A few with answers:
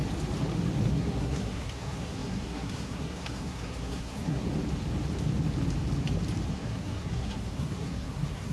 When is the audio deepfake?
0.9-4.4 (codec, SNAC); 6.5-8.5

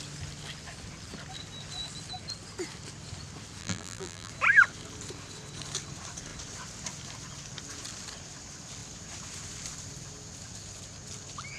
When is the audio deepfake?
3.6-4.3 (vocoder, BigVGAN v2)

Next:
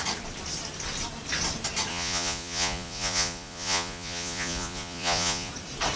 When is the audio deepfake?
1.9-5.5 (vocoder, Vocos)